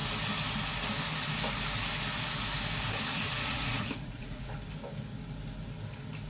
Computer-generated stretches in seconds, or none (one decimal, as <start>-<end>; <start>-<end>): 3.1-4.5